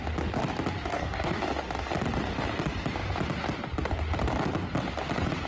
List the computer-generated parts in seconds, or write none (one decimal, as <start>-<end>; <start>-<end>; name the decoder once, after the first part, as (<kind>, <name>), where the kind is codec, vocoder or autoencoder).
0.9-1.4 (codec, DAC)